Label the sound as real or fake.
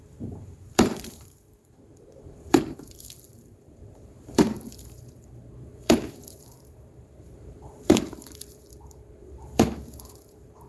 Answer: fake